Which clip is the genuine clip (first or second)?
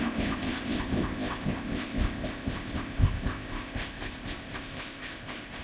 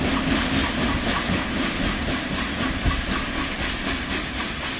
second